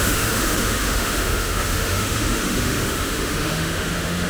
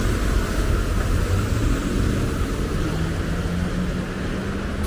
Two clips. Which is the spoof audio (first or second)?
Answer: first